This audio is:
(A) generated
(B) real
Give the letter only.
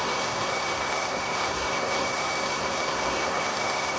A